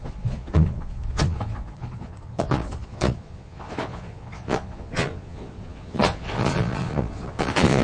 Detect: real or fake fake